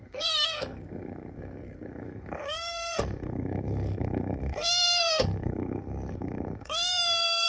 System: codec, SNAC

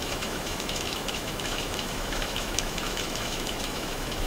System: autoencoder, DAC-VAE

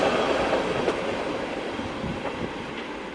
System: none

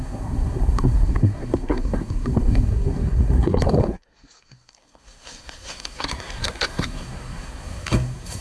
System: codec, SNAC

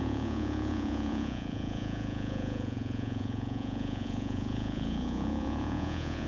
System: vocoder, Vocos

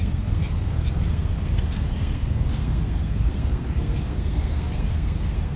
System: codec, SNAC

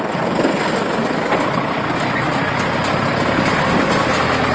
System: none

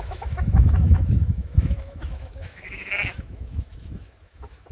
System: autoencoder, DAC-VAE